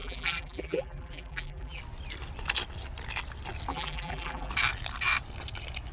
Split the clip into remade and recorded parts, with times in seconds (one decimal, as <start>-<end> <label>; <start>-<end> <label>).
0.0-1.8 remade; 1.8-3.7 recorded; 3.7-4.5 remade; 4.5-5.9 recorded